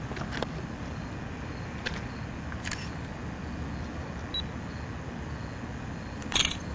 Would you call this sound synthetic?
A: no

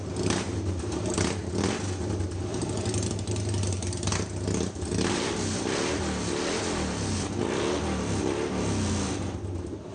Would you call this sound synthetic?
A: no